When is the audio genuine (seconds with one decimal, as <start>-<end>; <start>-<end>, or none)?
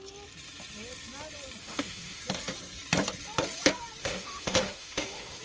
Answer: 0.0-1.6; 2.2-4.0